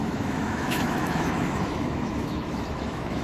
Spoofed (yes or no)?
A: yes